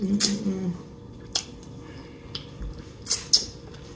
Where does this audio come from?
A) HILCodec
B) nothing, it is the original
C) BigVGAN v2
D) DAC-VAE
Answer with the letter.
B